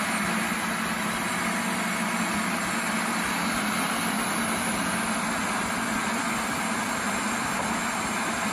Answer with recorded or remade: recorded